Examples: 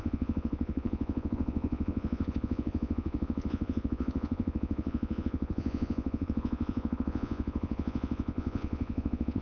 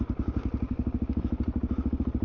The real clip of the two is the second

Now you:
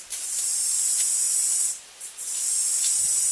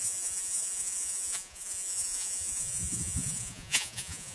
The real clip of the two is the first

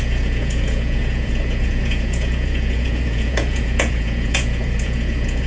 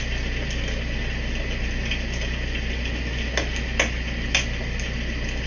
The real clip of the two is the second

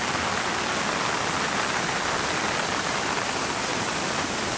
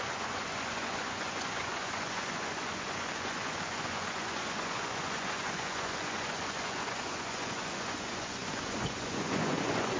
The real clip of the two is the first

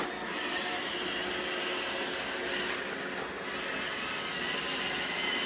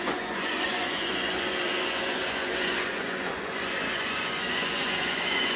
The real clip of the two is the first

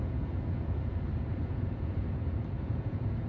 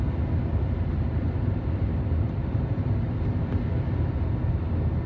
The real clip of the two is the second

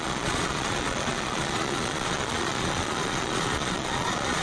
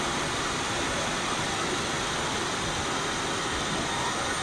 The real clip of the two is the second